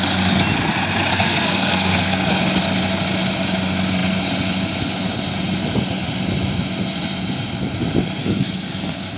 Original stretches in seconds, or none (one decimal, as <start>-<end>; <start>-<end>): 0.0-1.1; 2.4-8.2